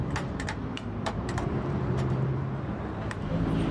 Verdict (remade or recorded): remade